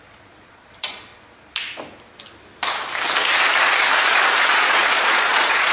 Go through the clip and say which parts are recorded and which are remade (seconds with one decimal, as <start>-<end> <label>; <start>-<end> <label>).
0.0-1.1 remade; 1.1-4.4 recorded; 4.4-5.7 remade